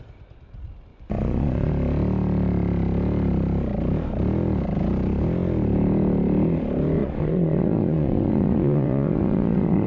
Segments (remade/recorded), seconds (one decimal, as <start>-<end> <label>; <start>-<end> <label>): 0.0-0.9 recorded; 0.9-1.7 remade; 1.7-7.0 recorded; 7.0-9.9 remade